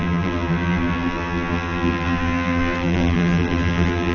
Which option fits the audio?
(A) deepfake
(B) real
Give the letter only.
A